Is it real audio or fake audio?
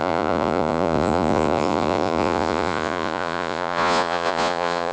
fake